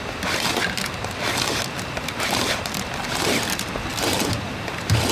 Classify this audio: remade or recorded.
recorded